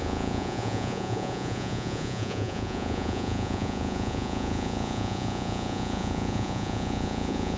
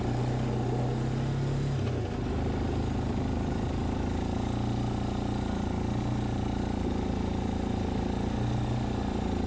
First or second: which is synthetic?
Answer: first